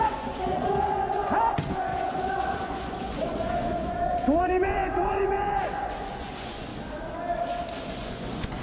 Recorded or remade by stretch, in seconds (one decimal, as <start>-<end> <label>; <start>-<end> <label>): 0.0-6.7 remade; 6.7-7.9 recorded; 7.9-8.6 remade